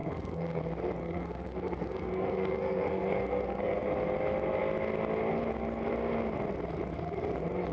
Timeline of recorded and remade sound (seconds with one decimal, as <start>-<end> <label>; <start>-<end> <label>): 0.0-0.6 remade; 0.6-1.0 recorded; 1.0-3.8 remade; 3.8-7.7 recorded